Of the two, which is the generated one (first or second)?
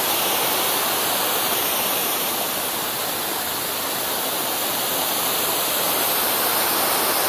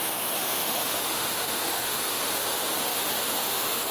second